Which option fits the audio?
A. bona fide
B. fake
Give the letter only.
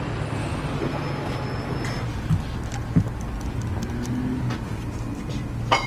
A